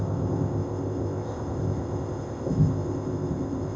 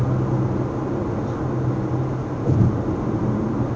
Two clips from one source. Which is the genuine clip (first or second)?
second